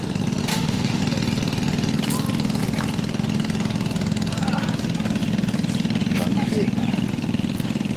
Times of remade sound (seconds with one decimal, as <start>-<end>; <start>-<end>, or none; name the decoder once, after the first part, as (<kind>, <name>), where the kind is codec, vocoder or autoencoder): 0.5-1.0 (autoencoder, DAC-VAE)